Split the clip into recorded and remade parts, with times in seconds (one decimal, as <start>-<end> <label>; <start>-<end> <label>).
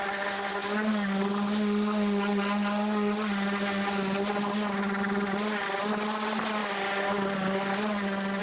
0.0-8.4 recorded